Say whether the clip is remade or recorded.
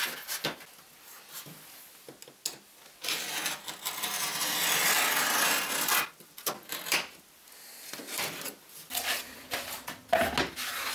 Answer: recorded